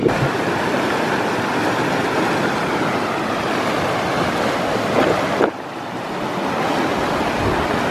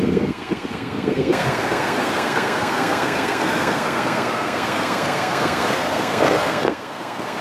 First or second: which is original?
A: first